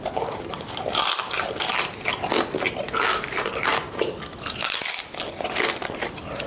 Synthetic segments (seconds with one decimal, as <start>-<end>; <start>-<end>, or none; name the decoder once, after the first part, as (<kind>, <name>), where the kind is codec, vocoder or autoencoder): none